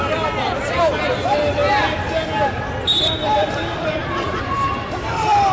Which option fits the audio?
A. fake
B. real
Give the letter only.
A